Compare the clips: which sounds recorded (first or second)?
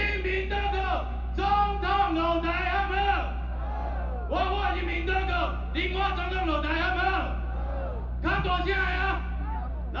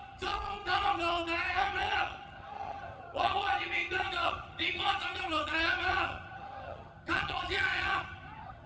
first